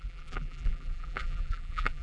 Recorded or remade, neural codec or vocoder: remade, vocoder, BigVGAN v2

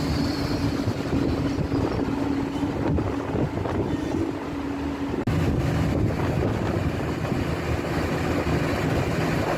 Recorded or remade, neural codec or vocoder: recorded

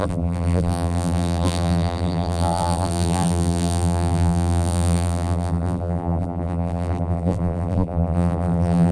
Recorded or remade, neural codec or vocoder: remade, vocoder, BigVGAN v2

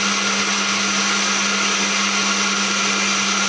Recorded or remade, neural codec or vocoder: recorded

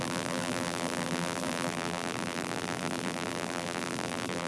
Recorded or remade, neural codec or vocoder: remade, vocoder, BigVGAN v2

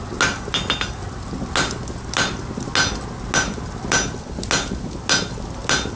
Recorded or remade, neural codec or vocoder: recorded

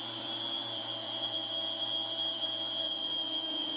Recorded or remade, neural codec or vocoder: remade, vocoder, BigVGAN v2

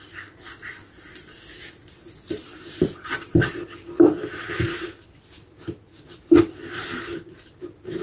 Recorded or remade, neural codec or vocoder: recorded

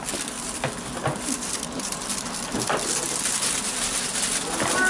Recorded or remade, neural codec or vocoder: remade, vocoder, BigVGAN v2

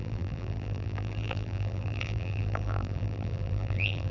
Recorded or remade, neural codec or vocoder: remade, vocoder, BigVGAN v2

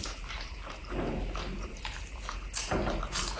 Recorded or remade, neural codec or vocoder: remade, vocoder, BigVGAN v2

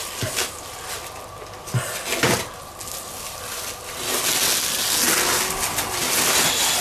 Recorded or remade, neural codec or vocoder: recorded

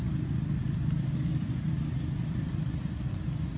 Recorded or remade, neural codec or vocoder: remade, vocoder, BigVGAN v2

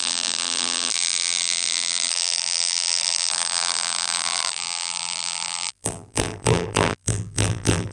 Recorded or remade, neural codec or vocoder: remade, vocoder, BigVGAN v2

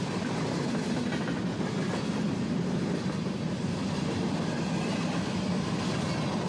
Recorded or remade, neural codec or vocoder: recorded